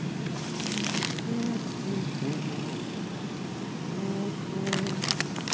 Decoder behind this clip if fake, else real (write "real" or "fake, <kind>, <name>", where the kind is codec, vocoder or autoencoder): real